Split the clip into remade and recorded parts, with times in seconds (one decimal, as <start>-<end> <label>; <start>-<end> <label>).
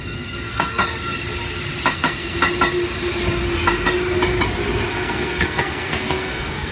0.0-0.8 remade; 0.8-1.9 recorded; 1.9-2.4 remade; 2.4-4.9 recorded; 4.9-6.7 remade